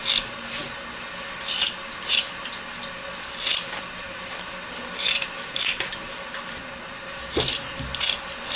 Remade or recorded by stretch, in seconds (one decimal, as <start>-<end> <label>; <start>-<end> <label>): 0.0-8.6 recorded

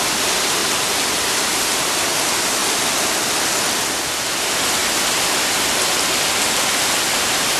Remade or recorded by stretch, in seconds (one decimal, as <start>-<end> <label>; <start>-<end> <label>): 0.0-0.6 remade; 0.6-1.1 recorded; 1.1-2.6 remade; 2.6-4.3 recorded; 4.3-4.8 remade; 4.8-7.1 recorded; 7.1-7.6 remade

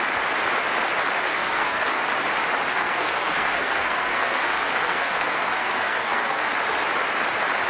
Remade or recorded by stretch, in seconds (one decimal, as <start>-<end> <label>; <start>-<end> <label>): 0.0-1.3 recorded; 1.3-2.0 remade; 2.0-2.7 recorded; 2.7-6.5 remade; 6.5-7.7 recorded

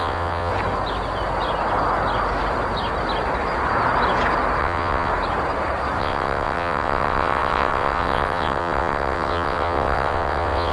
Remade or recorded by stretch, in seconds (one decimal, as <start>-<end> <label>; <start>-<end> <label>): 0.0-0.5 remade; 0.5-4.6 recorded; 4.6-5.1 remade; 5.1-6.0 recorded; 6.0-10.7 remade